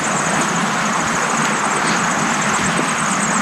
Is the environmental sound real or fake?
real